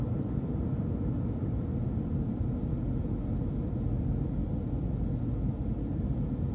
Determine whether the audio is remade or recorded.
recorded